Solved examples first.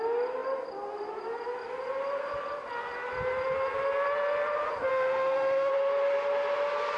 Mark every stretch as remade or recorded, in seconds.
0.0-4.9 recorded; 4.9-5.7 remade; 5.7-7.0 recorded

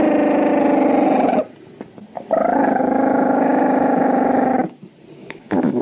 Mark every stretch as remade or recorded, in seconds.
0.0-2.8 recorded; 2.8-4.5 remade; 4.5-5.2 recorded; 5.2-5.8 remade

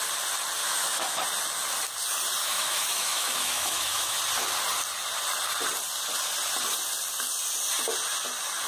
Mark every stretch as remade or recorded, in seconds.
0.0-0.6 recorded; 0.6-1.2 remade; 1.2-2.4 recorded; 2.4-4.2 remade; 4.2-8.7 recorded